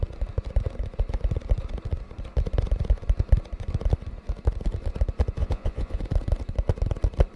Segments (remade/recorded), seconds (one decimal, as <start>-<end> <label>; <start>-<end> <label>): 0.0-5.4 recorded; 5.4-6.0 remade; 6.0-7.4 recorded